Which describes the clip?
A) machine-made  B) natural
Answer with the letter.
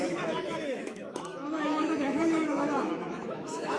A